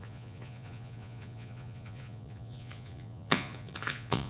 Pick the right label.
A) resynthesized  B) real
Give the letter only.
A